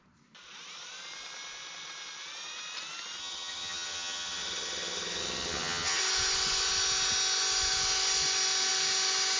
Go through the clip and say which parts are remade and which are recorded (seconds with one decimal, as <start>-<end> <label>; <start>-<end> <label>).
0.0-3.2 recorded; 3.2-6.0 remade; 6.0-9.4 recorded